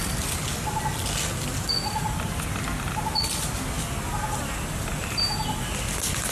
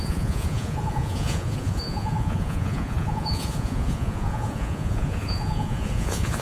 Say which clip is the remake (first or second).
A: second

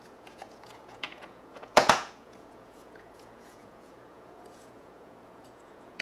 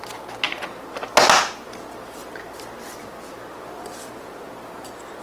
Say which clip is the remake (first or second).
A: first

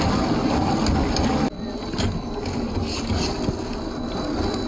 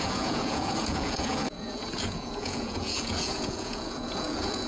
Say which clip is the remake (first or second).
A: second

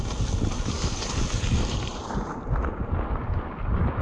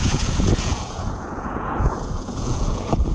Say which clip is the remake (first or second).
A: second